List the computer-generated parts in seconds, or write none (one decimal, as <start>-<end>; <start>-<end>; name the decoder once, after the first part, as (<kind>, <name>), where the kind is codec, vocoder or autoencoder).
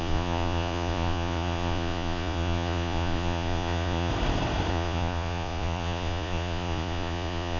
0.0-4.1 (vocoder, Vocos); 4.7-7.6